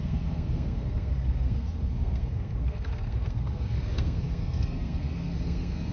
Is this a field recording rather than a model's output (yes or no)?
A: no